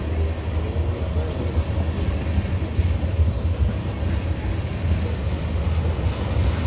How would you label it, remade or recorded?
recorded